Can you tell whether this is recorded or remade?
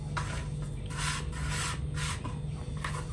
recorded